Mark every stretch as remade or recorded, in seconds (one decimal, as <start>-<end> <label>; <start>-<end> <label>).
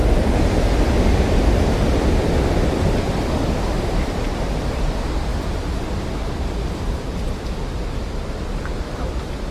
0.0-9.5 remade